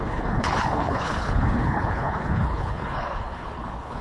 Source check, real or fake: fake